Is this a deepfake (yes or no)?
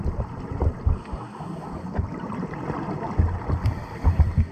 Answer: no